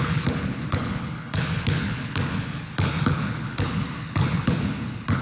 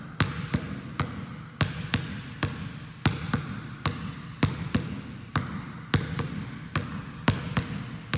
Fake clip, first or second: first